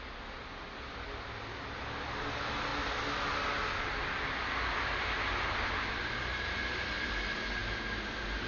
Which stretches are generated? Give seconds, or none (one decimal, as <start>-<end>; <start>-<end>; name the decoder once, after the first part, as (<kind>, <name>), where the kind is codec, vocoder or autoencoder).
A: none